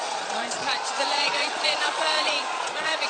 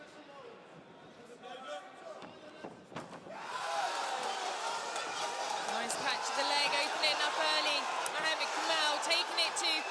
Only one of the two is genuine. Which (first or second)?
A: second